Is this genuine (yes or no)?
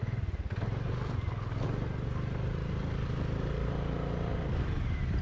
yes